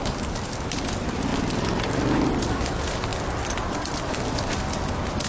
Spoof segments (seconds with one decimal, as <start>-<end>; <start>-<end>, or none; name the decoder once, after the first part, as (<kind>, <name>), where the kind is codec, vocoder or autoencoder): none